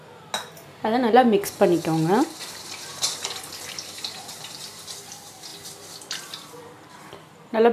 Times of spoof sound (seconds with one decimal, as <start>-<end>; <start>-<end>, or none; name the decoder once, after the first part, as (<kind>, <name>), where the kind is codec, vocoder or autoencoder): none